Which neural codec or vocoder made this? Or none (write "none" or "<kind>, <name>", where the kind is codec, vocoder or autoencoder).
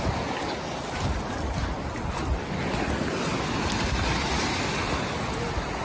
none